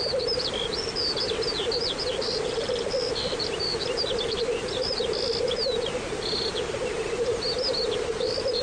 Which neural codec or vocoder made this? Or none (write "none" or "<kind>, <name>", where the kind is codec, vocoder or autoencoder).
none